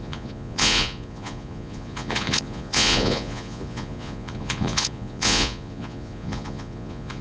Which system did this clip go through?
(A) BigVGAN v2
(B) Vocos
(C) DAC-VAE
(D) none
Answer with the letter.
B